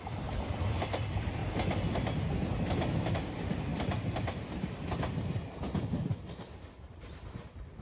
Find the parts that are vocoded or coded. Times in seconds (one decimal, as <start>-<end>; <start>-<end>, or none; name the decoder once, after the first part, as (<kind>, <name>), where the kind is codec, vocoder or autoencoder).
0.0-1.4 (vocoder, BigVGAN v2); 3.1-7.8